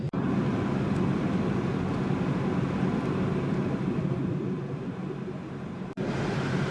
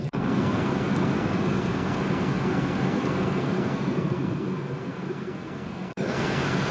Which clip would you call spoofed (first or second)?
second